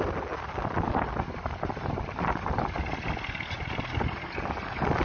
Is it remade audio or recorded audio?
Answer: recorded